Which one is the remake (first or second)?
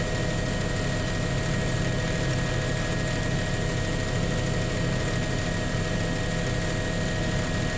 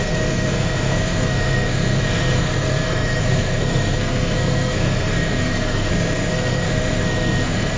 second